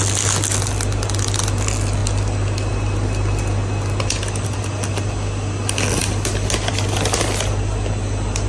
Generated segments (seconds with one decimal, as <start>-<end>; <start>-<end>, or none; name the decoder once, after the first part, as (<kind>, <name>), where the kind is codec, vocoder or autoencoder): none